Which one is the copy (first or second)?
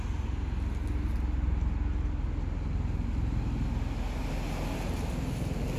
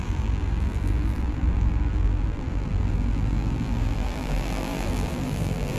second